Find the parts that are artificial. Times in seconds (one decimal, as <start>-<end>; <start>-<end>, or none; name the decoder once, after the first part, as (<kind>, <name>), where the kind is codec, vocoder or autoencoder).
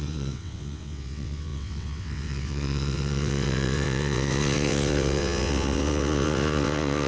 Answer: 0.0-7.1 (vocoder, WaveNeXt)